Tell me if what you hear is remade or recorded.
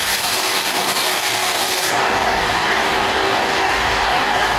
remade